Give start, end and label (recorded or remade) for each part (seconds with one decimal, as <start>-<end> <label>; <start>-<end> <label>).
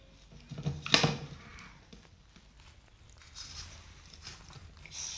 0.0-5.2 recorded